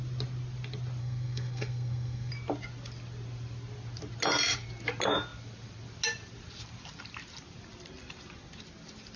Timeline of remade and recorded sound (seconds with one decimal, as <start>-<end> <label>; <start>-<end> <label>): 0.0-1.0 recorded; 1.0-2.3 remade; 2.3-9.2 recorded